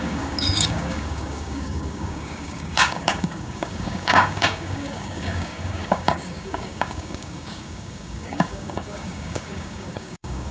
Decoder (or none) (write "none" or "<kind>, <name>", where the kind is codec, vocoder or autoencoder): codec, DAC